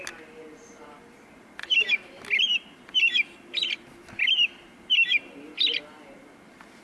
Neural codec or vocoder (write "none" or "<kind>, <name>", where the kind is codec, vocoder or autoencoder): none